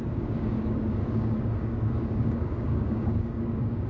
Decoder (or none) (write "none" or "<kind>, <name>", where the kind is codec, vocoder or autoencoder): codec, DAC